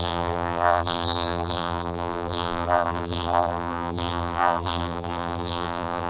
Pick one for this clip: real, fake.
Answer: fake